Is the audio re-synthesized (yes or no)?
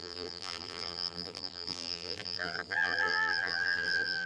yes